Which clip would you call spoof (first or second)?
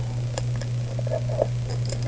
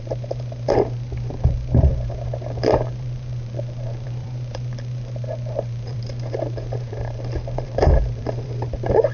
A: second